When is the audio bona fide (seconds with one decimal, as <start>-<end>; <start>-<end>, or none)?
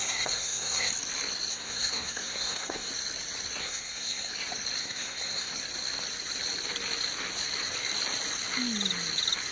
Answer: 0.9-1.5; 2.9-3.6; 4.3-4.8; 5.5-9.5